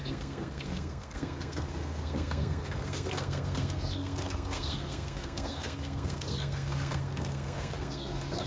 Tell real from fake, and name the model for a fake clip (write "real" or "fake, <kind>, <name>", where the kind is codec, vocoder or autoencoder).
fake, codec, SNAC